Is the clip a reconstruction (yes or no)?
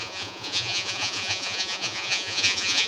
yes